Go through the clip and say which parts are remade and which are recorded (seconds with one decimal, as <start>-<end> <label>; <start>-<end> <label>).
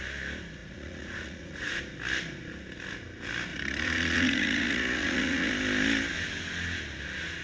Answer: 0.0-0.6 recorded; 0.6-1.8 remade; 1.8-3.5 recorded; 3.5-5.5 remade; 5.5-7.4 recorded